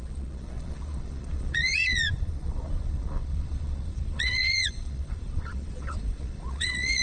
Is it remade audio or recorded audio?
remade